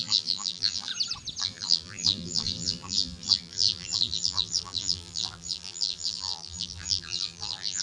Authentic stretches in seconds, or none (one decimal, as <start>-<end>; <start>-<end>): 0.9-1.4